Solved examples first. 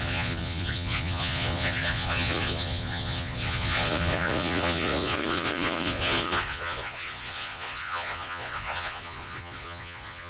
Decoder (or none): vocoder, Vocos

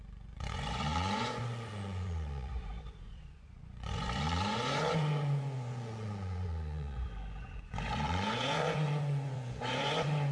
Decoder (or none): vocoder, Vocos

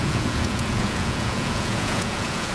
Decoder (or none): vocoder, Vocos